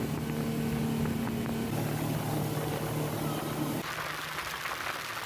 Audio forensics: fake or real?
real